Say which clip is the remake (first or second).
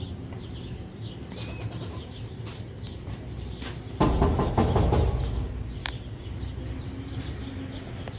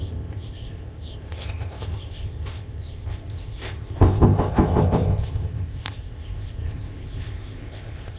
second